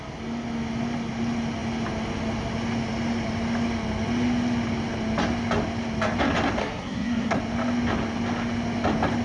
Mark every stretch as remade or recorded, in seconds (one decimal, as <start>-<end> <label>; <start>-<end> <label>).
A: 0.0-6.6 recorded; 6.6-7.4 remade; 7.4-9.2 recorded